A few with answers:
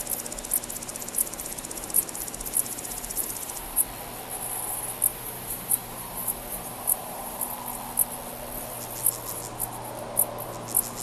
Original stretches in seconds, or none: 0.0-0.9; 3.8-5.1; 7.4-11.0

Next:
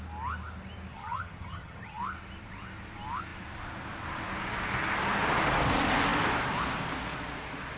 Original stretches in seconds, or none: 0.0-0.9; 2.0-7.8

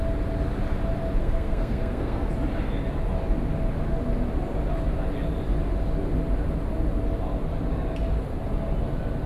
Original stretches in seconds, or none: 0.0-1.2; 2.3-9.3

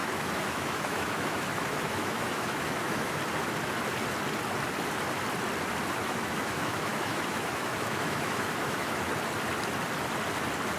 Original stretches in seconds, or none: 3.2-6.0; 9.1-10.8

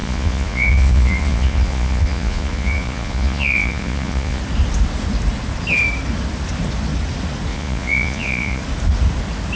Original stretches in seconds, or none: 4.4-7.5; 8.6-9.6

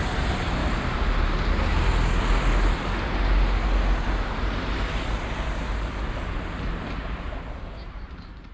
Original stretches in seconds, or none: 0.6-4.2

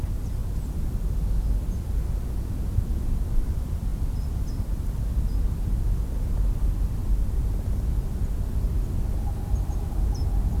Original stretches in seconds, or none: 0.0-7.0; 7.6-10.6